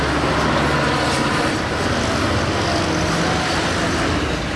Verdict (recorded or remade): recorded